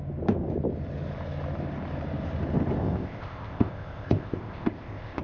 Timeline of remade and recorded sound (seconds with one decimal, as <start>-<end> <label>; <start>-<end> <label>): 0.0-2.8 recorded; 2.8-5.2 remade